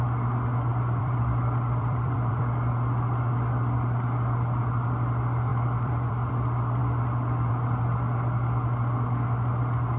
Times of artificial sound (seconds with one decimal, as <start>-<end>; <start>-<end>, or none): 0.7-2.4; 5.5-6.3